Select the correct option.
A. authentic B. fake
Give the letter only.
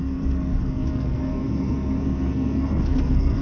B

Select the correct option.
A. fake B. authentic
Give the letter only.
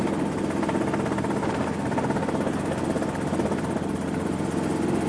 B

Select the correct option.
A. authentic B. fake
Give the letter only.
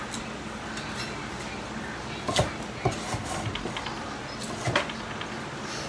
A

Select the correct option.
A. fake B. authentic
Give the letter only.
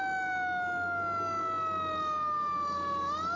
B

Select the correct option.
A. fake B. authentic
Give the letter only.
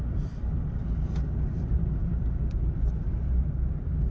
B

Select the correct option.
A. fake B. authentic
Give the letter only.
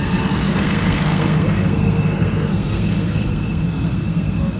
A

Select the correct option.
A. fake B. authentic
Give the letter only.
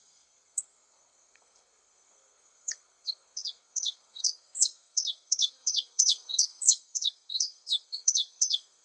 A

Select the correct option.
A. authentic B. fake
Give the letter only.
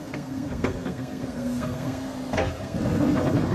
B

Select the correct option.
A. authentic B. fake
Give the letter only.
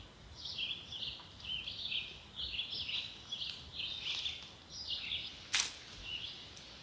A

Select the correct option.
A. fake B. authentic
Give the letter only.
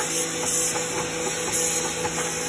B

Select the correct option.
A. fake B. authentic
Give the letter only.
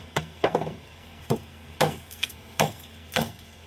A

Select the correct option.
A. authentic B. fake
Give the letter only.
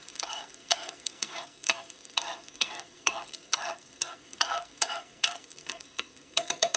B